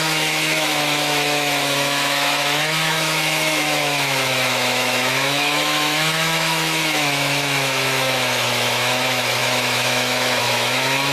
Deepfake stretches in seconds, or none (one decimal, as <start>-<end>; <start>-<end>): 0.0-11.1